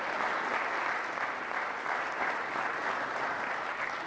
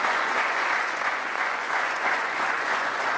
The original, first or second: first